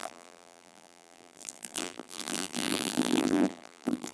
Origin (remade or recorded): remade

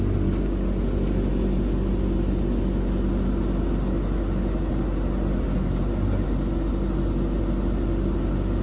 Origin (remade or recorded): recorded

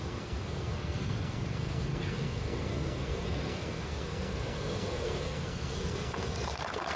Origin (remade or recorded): remade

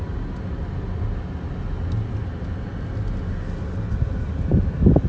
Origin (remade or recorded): recorded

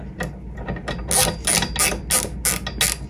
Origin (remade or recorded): recorded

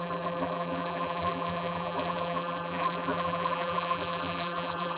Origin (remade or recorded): remade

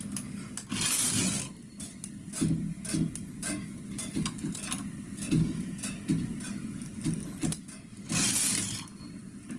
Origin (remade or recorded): recorded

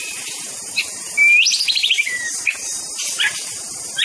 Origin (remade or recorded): recorded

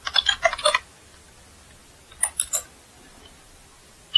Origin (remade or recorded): recorded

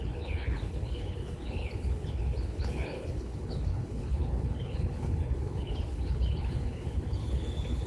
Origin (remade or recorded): remade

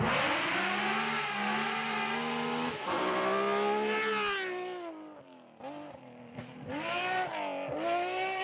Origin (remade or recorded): recorded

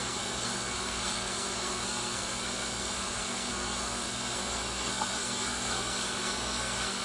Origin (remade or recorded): remade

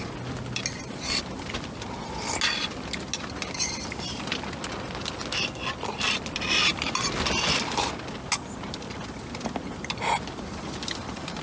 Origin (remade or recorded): recorded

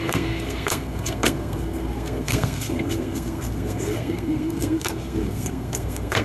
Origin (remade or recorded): remade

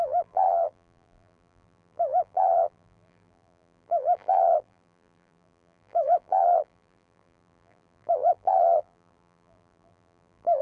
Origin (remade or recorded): remade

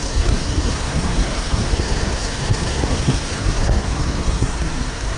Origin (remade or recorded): remade